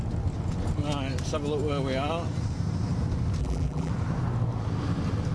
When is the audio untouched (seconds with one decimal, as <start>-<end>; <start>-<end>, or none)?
0.0-3.4; 3.9-5.3